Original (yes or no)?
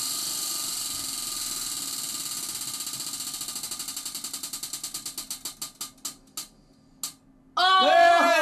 yes